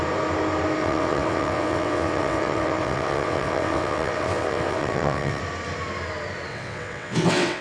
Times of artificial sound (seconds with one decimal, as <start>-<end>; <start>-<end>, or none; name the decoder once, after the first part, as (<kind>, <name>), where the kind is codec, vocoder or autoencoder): 0.8-5.4 (vocoder, WaveNeXt); 6.5-7.6